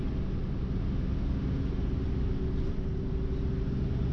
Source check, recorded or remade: recorded